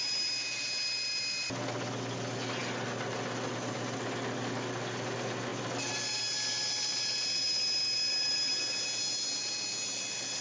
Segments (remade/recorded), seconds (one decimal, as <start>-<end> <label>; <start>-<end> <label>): 0.0-10.4 recorded